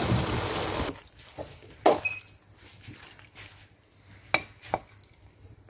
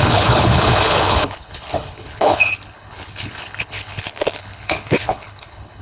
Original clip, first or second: first